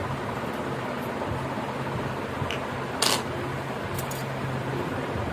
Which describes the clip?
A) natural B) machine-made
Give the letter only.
A